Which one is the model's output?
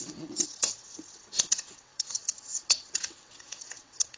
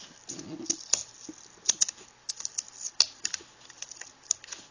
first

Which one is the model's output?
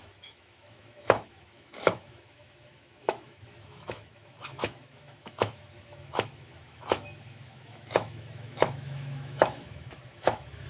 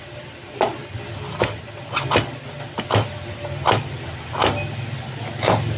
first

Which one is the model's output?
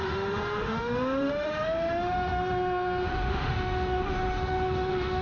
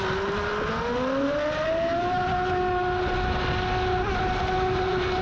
first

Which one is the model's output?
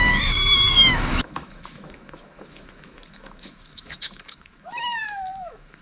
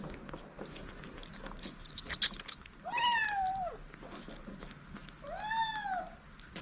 first